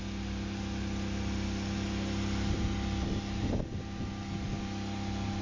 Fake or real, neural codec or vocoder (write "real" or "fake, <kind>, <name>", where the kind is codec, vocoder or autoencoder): real